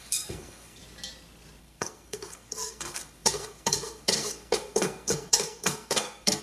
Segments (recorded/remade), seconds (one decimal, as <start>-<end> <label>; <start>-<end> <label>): 0.0-0.8 remade; 0.8-1.6 recorded; 1.6-6.4 remade